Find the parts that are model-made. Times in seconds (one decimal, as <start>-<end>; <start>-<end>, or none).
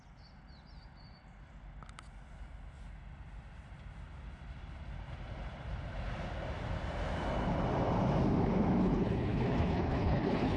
8.8-10.6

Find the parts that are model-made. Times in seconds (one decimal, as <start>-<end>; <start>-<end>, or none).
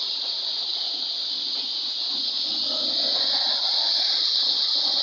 none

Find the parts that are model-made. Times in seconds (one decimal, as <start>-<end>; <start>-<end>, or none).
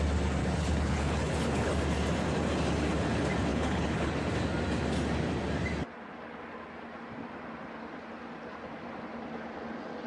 0.4-1.7; 3.5-4.1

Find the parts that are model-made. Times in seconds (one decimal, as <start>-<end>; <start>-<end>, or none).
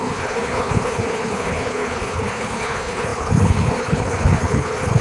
0.0-5.0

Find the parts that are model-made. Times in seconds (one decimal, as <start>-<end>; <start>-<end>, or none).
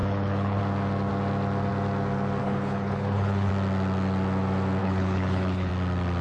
0.0-0.6; 2.4-3.5; 4.8-5.7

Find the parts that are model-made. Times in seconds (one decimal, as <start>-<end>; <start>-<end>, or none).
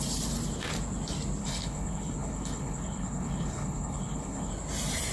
1.4-4.5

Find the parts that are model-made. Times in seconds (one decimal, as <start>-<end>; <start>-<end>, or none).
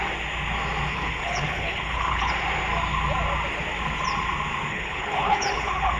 0.9-2.3; 4.7-6.0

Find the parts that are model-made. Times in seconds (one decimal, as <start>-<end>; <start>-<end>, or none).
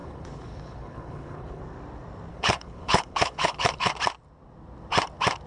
0.0-1.6; 2.3-3.9